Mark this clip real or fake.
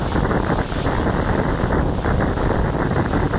real